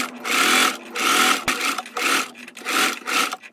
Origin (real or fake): real